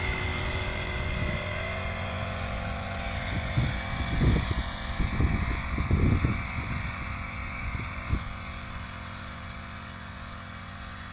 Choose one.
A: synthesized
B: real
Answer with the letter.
A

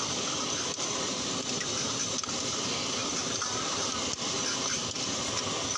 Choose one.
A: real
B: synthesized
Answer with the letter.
A